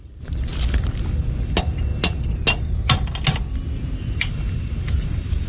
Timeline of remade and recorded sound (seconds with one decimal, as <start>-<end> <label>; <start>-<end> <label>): 0.0-1.9 remade; 1.9-4.0 recorded; 4.0-5.5 remade